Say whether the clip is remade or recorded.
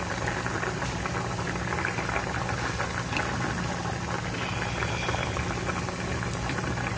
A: recorded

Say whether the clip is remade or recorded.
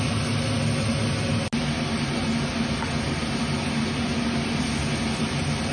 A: recorded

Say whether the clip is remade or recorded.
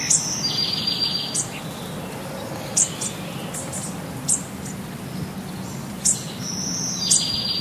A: recorded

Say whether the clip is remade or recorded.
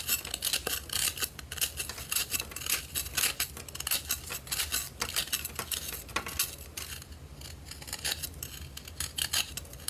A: recorded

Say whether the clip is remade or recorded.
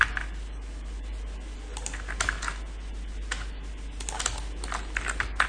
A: recorded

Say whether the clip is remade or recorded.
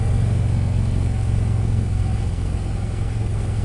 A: remade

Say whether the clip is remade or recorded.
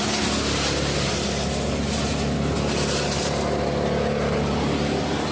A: recorded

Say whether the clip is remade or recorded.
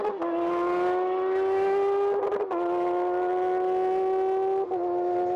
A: recorded